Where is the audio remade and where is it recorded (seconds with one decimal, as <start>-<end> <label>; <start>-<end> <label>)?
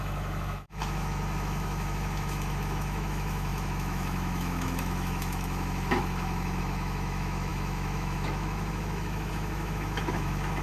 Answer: 0.0-10.6 remade